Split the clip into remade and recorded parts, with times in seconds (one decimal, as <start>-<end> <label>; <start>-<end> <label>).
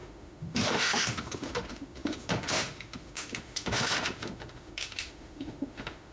0.0-6.1 remade